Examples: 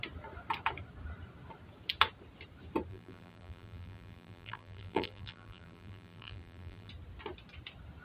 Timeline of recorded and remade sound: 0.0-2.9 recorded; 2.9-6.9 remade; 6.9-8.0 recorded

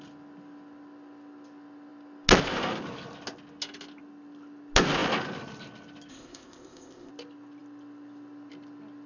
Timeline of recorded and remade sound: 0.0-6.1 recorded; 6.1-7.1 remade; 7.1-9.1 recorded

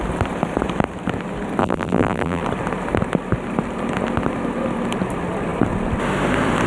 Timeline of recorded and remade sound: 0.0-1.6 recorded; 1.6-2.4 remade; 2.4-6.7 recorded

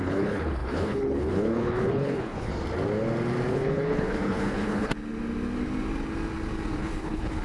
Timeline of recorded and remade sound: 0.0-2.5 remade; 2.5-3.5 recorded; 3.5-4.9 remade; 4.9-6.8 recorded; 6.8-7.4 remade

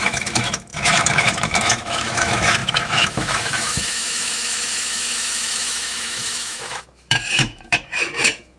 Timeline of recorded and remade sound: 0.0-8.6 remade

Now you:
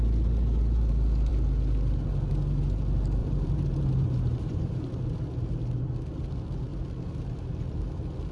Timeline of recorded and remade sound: 0.0-0.4 recorded; 0.4-0.9 remade; 0.9-3.2 recorded; 3.2-5.0 remade; 5.0-8.3 recorded